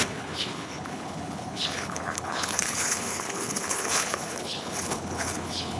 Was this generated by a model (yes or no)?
yes